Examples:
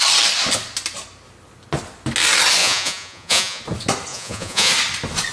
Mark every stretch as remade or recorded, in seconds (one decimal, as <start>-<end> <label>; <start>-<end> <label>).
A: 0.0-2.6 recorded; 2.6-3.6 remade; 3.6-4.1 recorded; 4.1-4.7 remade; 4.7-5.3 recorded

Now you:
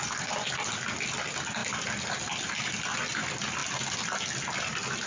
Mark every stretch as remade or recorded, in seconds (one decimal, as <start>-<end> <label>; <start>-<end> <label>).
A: 0.0-5.1 recorded

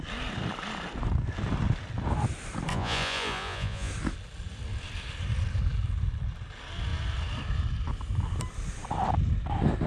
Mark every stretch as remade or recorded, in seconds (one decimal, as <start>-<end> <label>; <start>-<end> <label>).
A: 0.0-2.7 recorded; 2.7-3.9 remade; 3.9-9.9 recorded

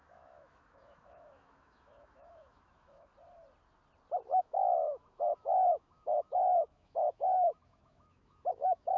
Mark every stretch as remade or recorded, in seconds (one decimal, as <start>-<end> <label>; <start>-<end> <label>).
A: 0.0-3.1 remade; 3.1-4.4 recorded; 4.4-9.0 remade

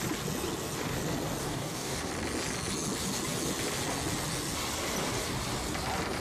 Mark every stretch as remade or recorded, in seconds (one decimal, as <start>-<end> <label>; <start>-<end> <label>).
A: 0.0-1.4 recorded; 1.4-2.1 remade; 2.1-6.2 recorded

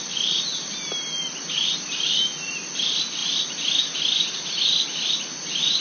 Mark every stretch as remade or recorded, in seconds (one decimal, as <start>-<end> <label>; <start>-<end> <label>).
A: 0.0-5.8 recorded

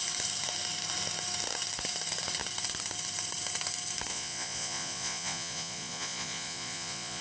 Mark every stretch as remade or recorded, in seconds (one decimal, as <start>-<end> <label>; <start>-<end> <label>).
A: 0.0-4.1 recorded; 4.1-7.2 remade

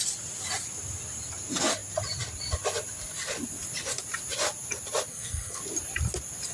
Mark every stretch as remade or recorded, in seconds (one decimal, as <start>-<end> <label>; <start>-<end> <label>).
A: 0.0-5.1 recorded; 5.1-5.6 remade; 5.6-6.5 recorded